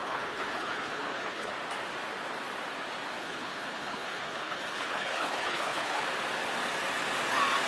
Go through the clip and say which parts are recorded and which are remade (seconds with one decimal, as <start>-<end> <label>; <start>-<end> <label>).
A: 0.0-1.5 remade; 1.5-3.2 recorded; 3.2-6.0 remade; 6.0-7.7 recorded